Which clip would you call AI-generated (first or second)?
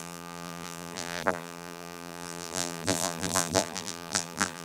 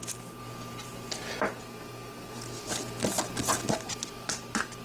first